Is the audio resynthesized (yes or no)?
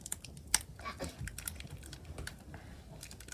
no